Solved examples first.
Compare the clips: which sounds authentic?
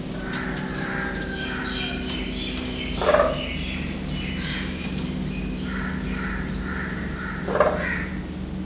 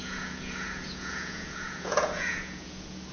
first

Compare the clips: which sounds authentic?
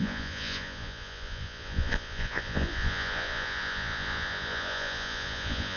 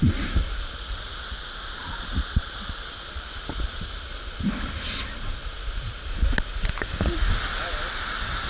second